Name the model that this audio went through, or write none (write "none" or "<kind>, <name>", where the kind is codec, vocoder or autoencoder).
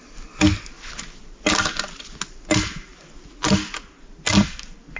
none